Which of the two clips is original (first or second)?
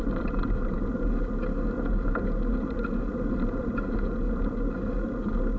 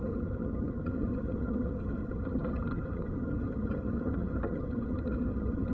first